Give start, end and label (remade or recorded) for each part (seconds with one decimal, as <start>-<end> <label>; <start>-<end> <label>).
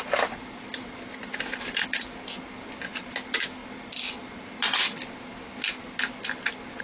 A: 0.0-6.8 recorded